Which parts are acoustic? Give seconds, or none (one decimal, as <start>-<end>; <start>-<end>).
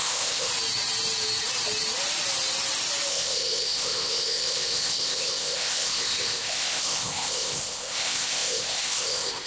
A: 0.5-3.1